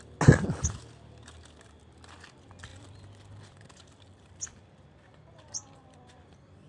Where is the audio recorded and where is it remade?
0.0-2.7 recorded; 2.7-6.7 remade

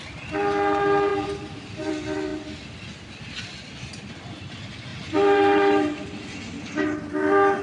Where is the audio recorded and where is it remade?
0.0-1.1 recorded; 1.1-1.9 remade; 1.9-4.9 recorded; 4.9-6.2 remade; 6.2-7.6 recorded

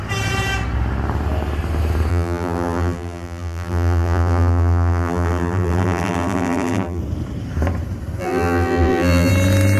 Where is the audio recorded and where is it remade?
0.0-2.1 recorded; 2.1-7.0 remade; 7.0-8.2 recorded; 8.2-9.3 remade; 9.3-9.8 recorded

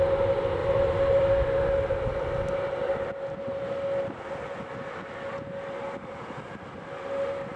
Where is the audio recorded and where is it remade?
0.0-0.6 recorded; 0.6-1.3 remade; 1.3-7.6 recorded

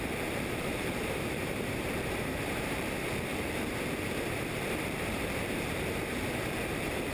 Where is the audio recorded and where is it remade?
0.0-7.1 remade

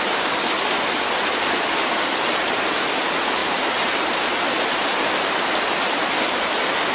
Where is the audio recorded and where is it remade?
0.0-3.4 recorded; 3.4-3.9 remade; 3.9-6.9 recorded

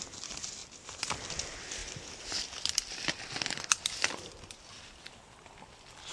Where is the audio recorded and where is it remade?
0.0-1.8 recorded; 1.8-4.6 remade; 4.6-6.1 recorded